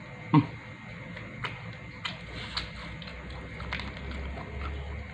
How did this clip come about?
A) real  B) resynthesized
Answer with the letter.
A